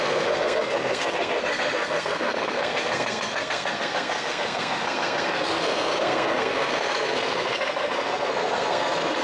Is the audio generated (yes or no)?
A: yes